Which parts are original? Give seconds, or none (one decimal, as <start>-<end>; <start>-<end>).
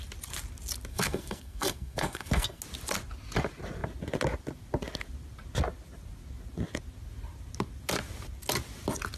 0.0-0.9; 2.6-9.2